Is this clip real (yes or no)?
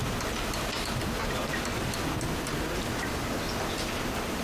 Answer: yes